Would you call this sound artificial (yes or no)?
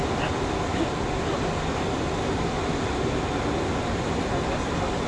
no